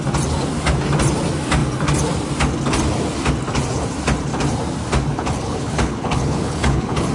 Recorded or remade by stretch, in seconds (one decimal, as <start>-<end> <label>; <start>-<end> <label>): 0.0-5.1 recorded; 5.1-7.1 remade